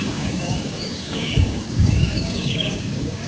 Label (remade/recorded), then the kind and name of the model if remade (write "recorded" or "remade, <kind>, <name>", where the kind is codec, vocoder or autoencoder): remade, codec, DAC